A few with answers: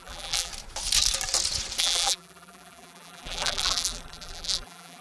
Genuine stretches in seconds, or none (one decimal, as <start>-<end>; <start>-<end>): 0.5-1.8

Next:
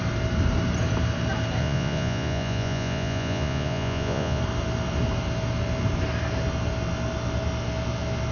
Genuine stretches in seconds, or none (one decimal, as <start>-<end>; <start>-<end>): 0.0-1.6; 4.4-8.3

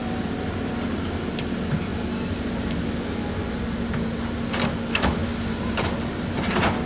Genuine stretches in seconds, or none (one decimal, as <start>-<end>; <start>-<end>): 0.7-6.9

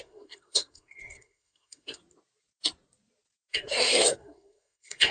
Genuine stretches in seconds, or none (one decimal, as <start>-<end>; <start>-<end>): 2.0-3.5